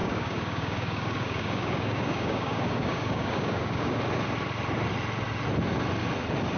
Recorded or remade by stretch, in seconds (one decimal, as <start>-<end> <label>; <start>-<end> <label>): 0.0-4.0 remade; 4.0-6.6 recorded